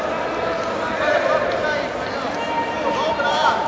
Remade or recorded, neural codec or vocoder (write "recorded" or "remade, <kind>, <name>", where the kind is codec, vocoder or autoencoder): recorded